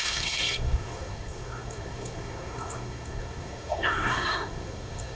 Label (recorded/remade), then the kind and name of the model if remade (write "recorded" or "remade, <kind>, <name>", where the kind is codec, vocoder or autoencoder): remade, codec, SNAC